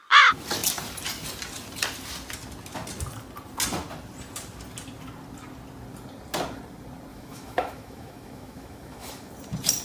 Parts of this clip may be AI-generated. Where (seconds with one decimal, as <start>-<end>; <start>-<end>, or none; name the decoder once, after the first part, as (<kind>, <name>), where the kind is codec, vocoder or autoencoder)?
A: 7.1-9.3 (autoencoder, DAC-VAE)